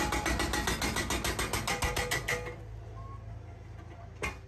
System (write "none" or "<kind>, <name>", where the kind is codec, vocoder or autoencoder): none